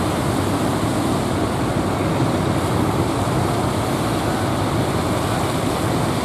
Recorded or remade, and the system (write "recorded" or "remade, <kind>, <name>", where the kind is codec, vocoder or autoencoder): recorded